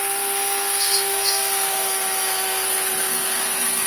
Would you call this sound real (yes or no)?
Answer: no